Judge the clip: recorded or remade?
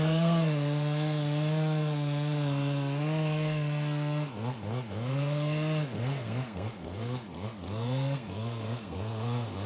remade